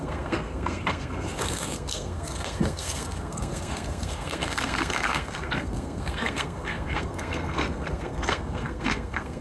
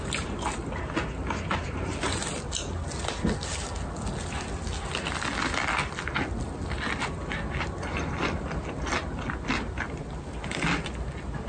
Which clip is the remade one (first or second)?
first